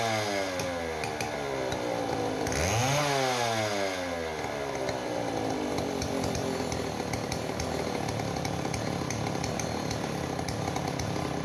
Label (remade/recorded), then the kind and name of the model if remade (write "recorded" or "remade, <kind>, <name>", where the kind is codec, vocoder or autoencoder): recorded